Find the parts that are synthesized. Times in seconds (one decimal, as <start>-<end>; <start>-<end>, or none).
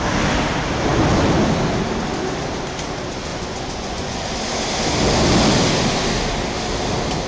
3.3-4.3